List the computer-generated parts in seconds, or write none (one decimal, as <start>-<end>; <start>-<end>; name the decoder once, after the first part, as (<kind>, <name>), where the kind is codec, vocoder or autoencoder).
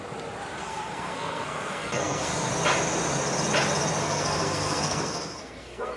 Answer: 0.6-2.5 (codec, SNAC); 4.0-6.0